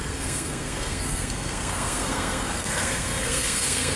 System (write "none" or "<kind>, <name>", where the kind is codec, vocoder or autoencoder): codec, SNAC